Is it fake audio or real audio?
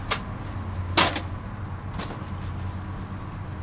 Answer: real